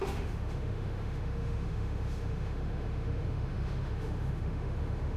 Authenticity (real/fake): fake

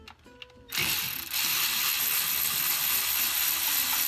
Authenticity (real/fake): real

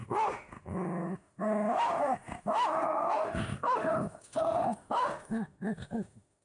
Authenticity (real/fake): fake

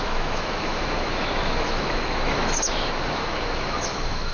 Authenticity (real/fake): fake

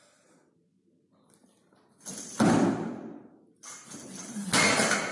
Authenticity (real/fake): real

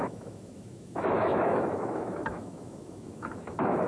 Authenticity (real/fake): fake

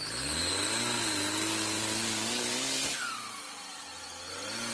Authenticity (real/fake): real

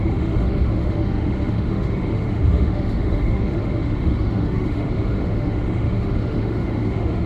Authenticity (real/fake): fake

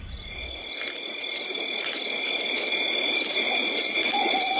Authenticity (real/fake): real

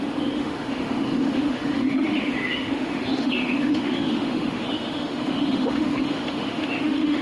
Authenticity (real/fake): fake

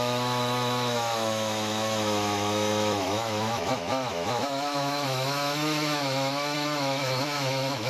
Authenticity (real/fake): fake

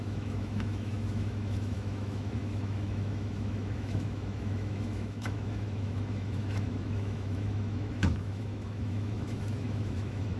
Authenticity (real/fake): fake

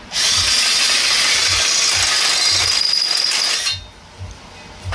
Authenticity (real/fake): real